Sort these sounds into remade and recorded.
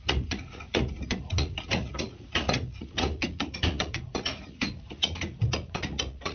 remade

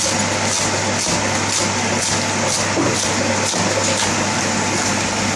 recorded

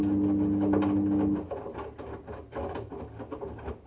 recorded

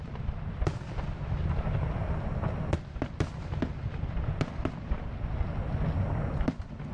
recorded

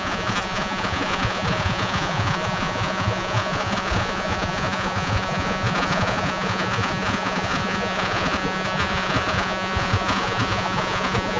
remade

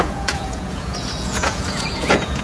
remade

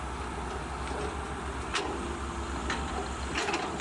recorded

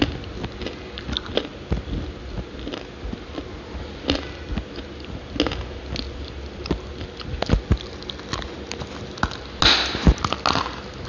recorded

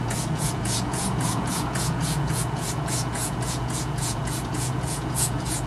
remade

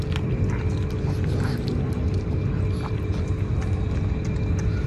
recorded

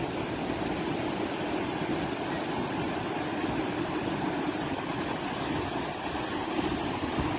recorded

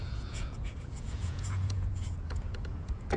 remade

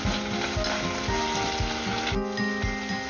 recorded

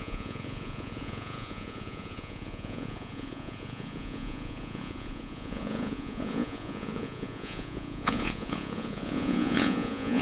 remade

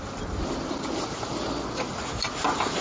recorded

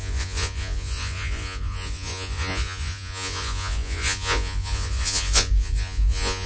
remade